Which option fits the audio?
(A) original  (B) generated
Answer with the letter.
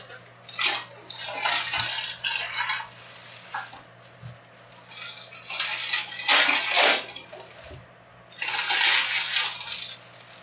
A